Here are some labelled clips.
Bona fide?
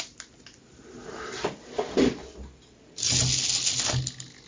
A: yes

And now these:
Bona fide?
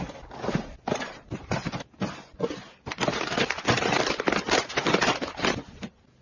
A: yes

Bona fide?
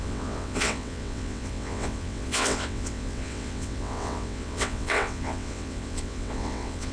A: no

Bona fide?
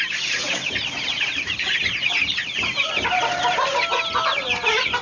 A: yes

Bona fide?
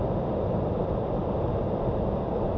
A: yes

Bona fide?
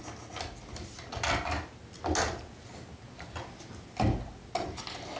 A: yes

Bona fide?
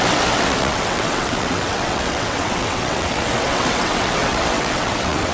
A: no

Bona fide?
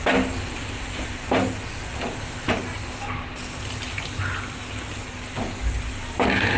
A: yes